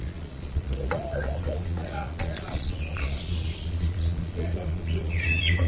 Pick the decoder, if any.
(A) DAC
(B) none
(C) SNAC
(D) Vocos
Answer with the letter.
D